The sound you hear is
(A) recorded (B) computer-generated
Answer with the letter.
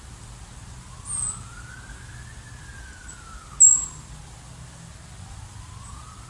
A